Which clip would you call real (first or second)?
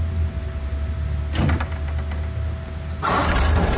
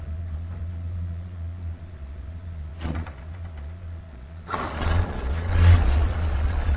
first